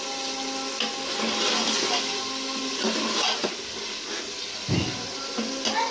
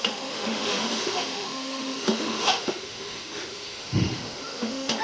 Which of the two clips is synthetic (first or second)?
second